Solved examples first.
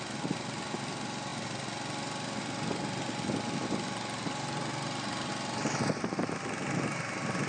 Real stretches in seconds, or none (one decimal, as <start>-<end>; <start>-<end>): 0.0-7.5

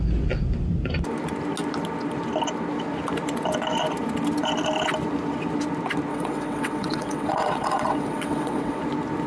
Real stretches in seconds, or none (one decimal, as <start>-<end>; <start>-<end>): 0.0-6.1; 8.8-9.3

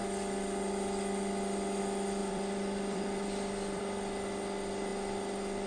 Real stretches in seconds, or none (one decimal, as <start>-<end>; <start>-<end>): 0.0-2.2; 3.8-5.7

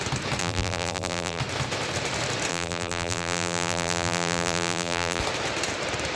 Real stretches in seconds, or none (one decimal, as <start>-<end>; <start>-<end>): 0.0-0.4; 1.4-2.5; 5.2-6.2

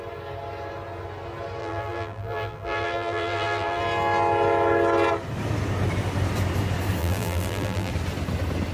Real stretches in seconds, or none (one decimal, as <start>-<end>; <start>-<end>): 0.0-1.6; 3.8-7.0; 7.9-8.7